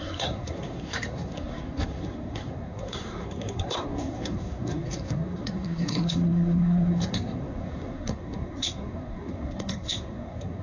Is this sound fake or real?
fake